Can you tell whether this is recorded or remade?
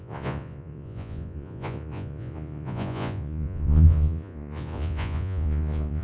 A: remade